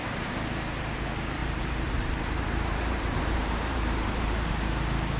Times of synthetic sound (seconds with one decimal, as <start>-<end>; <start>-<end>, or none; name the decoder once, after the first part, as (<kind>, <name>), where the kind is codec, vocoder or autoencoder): 0.0-0.9 (vocoder, BigVGAN v2); 1.4-4.5